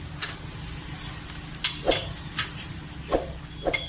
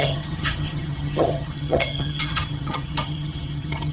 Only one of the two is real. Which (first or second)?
first